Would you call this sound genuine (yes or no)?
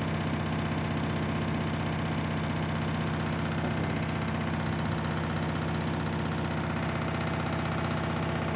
yes